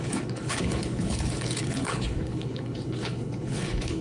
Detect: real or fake fake